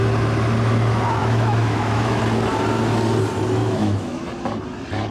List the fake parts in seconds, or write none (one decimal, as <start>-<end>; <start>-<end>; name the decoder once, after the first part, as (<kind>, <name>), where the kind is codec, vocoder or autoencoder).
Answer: 1.2-2.2 (autoencoder, DAC-VAE); 3.6-4.2